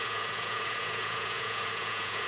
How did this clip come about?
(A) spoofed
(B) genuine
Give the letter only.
A